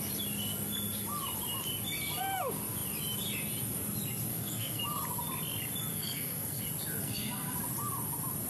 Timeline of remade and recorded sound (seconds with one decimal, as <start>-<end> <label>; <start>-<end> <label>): 0.0-4.3 recorded; 4.3-4.8 remade; 4.8-5.9 recorded; 5.9-6.6 remade; 6.6-7.0 recorded; 7.0-7.6 remade; 7.6-8.5 recorded